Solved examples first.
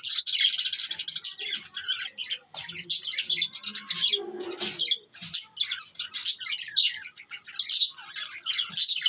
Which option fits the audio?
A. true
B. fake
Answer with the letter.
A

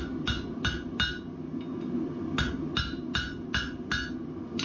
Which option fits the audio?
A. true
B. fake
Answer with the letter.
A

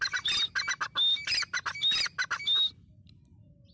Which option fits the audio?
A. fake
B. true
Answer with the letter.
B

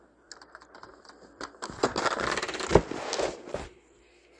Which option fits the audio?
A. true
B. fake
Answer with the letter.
A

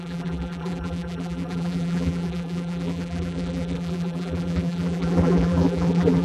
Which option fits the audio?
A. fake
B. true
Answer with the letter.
A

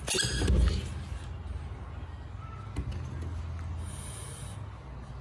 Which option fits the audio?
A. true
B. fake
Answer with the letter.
A